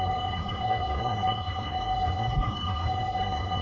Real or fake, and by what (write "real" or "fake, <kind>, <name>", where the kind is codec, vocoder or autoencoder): fake, codec, SNAC